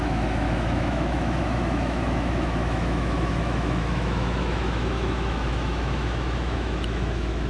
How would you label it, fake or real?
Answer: fake